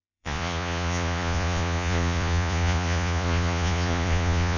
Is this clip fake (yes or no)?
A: yes